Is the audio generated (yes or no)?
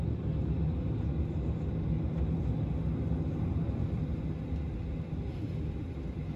no